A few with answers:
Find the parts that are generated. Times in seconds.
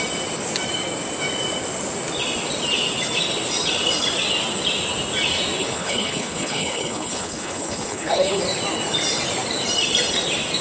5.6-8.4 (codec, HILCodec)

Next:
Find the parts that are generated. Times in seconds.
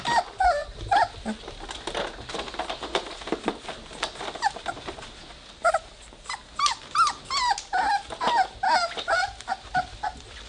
none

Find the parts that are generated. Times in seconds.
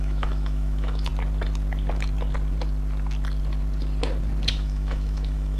0.0-1.1 (autoencoder, DAC-VAE); 4.5-5.6